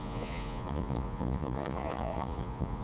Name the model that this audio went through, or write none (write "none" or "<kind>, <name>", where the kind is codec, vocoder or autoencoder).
vocoder, Vocos